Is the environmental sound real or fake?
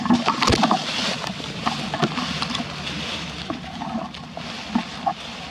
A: real